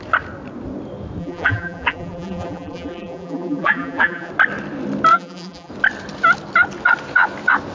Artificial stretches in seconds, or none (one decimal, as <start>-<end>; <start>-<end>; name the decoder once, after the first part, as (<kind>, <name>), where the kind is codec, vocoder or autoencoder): 1.2-4.3 (vocoder, BigVGAN v2); 5.1-5.7